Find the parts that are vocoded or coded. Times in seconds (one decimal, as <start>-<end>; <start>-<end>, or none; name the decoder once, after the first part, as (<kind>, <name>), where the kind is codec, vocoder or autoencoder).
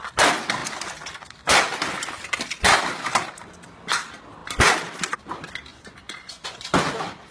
5.7-6.7 (vocoder, Vocos)